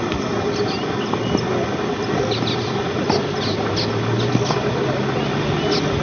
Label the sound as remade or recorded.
recorded